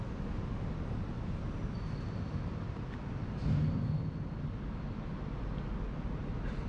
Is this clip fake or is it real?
real